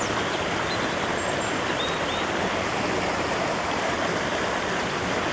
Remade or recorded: recorded